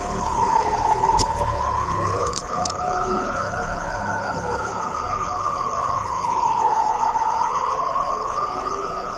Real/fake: fake